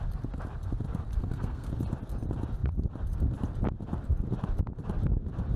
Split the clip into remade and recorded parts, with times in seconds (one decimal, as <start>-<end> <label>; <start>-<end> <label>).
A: 0.0-1.2 recorded; 1.2-1.7 remade; 1.7-5.6 recorded